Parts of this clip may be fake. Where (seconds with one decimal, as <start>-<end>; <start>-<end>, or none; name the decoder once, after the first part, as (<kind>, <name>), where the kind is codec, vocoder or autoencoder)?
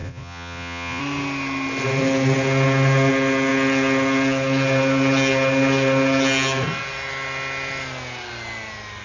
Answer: 0.0-1.0 (vocoder, Vocos)